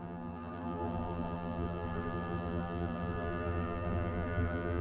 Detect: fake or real fake